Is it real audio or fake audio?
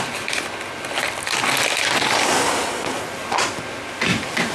real